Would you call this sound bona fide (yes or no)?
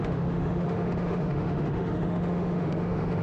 no